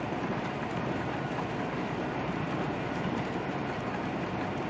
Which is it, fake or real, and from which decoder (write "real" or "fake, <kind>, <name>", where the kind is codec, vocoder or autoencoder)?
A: fake, vocoder, BigVGAN v2